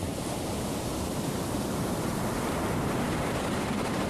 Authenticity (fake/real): real